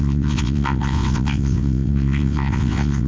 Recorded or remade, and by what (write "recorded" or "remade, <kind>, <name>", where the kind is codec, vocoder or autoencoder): remade, vocoder, WaveNeXt